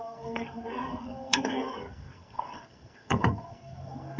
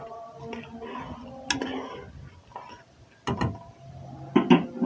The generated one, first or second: first